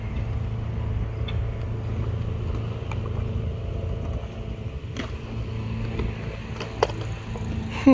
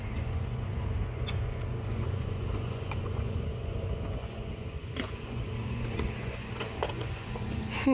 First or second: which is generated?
second